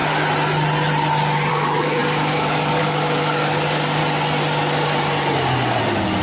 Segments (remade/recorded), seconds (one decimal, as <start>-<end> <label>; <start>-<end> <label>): 0.0-1.5 recorded; 1.5-4.0 remade; 4.0-5.8 recorded; 5.8-6.2 remade